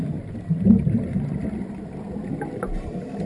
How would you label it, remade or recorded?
recorded